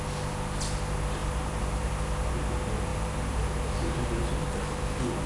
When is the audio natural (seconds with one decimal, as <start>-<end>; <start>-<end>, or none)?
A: 0.0-1.2; 2.0-2.9; 3.8-5.3